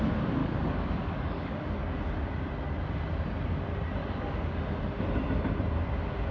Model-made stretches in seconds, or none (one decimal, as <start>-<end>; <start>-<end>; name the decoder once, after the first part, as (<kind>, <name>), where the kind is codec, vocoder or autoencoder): 0.4-2.0 (codec, DAC); 4.0-4.6